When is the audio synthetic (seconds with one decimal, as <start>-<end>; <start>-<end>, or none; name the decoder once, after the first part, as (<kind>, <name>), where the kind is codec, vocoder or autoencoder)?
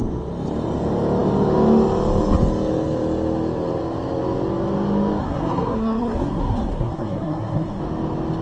5.2-7.8 (codec, SNAC)